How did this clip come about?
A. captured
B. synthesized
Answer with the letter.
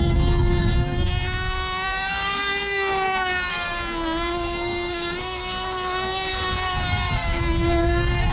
B